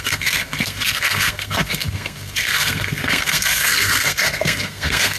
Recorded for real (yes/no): no